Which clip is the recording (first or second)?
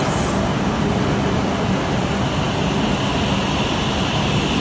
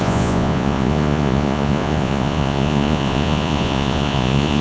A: first